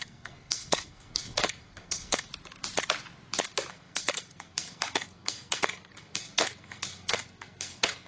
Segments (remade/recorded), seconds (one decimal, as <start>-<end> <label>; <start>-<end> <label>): 0.0-2.3 remade; 2.3-3.7 recorded; 3.7-8.1 remade